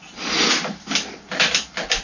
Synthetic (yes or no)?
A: no